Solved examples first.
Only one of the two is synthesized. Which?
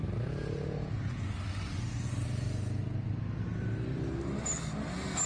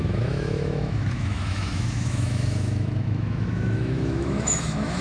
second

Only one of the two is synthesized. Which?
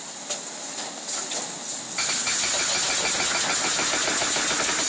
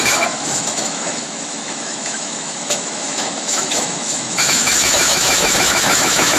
second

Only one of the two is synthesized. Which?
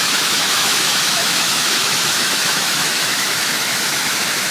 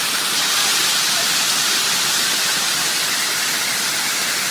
first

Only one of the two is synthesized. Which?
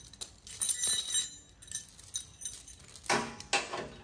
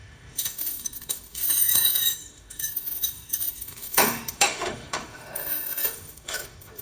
second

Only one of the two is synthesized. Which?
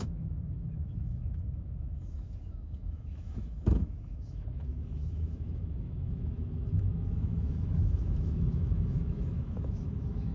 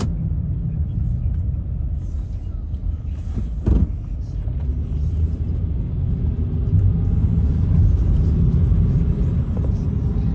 first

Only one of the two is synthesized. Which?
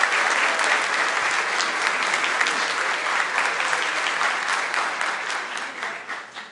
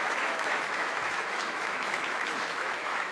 second